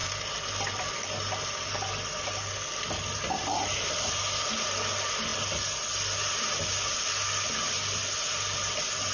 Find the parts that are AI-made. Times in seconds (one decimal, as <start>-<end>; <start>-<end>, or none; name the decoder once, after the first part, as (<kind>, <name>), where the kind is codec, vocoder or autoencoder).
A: 0.0-2.2 (vocoder, BigVGAN v2)